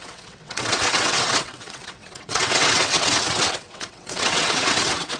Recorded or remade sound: remade